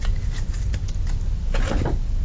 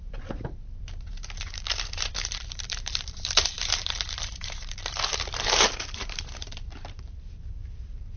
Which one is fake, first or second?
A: second